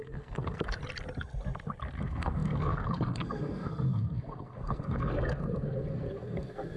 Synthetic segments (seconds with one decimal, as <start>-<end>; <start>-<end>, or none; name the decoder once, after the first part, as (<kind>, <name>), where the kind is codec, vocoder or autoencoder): 0.0-0.8 (codec, SNAC); 2.0-6.8

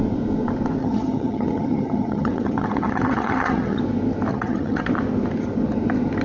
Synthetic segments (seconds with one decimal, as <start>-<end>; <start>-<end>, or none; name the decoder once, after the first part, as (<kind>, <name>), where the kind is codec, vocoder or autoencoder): 0.8-3.8 (vocoder, HiFi-GAN); 4.3-4.9